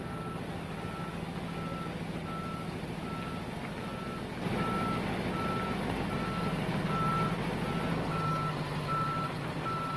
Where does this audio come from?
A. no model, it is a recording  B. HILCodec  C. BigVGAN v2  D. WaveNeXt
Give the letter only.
A